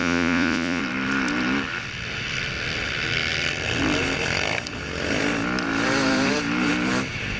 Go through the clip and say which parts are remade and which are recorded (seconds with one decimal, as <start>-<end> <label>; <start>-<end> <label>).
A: 0.0-0.8 remade; 0.8-7.4 recorded